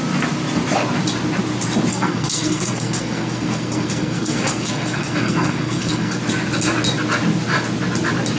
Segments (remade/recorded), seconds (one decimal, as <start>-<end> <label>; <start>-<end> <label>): 0.0-1.9 recorded; 1.9-6.2 remade; 6.2-8.4 recorded